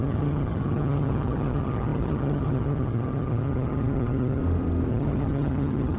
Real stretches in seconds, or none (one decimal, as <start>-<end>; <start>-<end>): 4.4-4.9